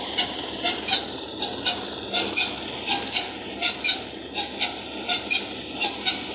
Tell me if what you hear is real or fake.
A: real